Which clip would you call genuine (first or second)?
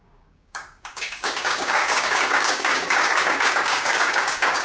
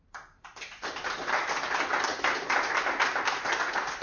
second